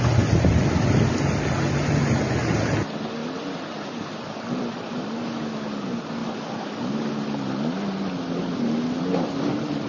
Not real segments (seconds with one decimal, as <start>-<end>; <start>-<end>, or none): 3.2-5.3; 6.2-7.1